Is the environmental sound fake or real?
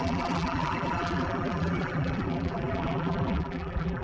fake